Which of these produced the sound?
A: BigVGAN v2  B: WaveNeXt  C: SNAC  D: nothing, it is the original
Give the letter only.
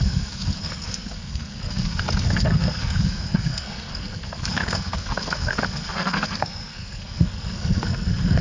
C